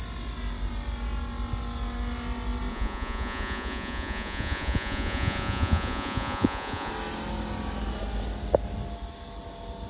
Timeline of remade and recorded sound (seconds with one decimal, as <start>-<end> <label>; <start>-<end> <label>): 0.0-2.7 recorded; 2.7-6.9 remade; 6.9-9.9 recorded